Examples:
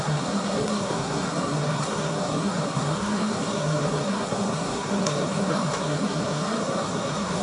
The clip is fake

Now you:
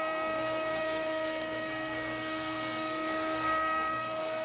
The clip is fake